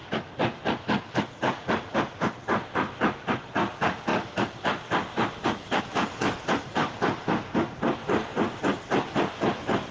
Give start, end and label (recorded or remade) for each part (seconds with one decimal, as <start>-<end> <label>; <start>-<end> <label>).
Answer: 0.0-0.8 recorded; 0.8-8.3 remade; 8.3-9.0 recorded; 9.0-9.9 remade